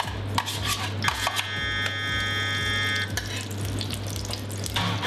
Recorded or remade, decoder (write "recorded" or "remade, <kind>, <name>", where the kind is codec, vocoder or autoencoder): recorded